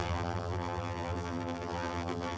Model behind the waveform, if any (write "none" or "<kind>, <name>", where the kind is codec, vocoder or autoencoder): vocoder, BigVGAN v2